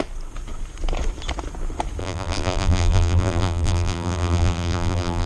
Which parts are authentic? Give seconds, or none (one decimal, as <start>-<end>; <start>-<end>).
0.0-2.0